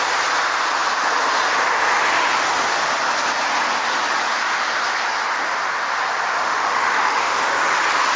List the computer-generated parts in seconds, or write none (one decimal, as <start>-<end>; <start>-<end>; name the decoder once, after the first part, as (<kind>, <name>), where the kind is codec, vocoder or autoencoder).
6.4-7.4 (autoencoder, DAC-VAE)